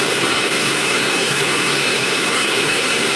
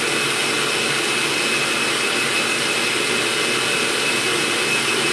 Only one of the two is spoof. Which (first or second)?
first